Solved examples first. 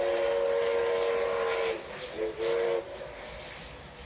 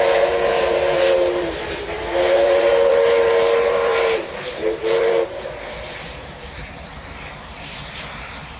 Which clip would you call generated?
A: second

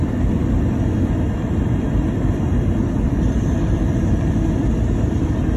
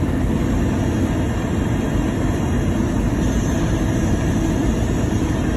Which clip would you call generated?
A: first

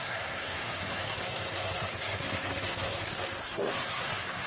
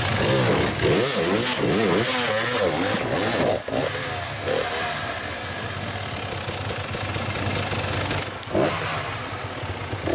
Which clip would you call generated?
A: first